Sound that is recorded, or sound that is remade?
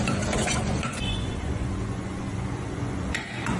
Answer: remade